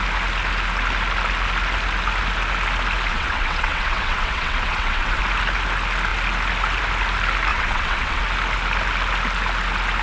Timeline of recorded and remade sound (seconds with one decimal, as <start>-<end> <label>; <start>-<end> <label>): 0.0-3.1 recorded; 3.1-5.2 remade; 5.2-7.5 recorded; 7.5-8.2 remade; 8.2-10.0 recorded